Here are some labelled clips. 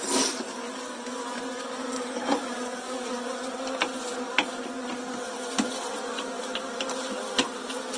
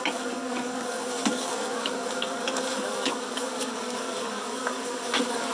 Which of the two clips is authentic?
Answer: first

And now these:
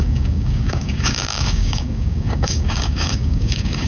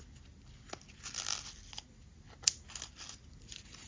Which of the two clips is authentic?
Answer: second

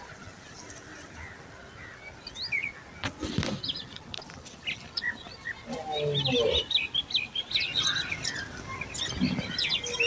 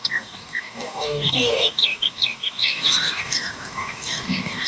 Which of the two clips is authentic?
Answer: first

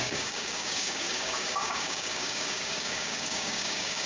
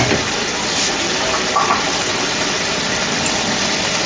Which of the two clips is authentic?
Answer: second